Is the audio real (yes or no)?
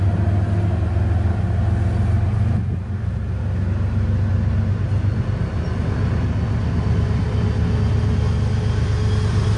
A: yes